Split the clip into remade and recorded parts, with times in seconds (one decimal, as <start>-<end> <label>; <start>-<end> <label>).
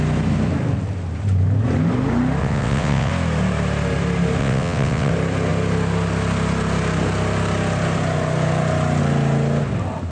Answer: 0.0-2.4 recorded; 2.4-3.1 remade; 3.1-4.4 recorded; 4.4-5.1 remade; 5.1-10.1 recorded